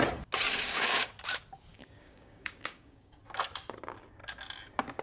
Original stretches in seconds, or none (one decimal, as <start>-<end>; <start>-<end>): 0.0-0.5; 1.1-1.7; 3.2-5.0